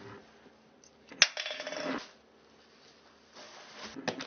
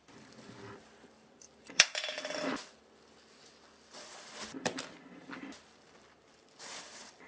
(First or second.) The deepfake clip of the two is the second